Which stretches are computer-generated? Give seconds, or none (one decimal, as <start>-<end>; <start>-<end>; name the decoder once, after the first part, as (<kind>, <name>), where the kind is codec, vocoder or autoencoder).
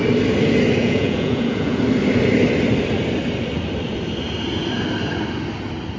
0.8-1.8 (vocoder, Vocos)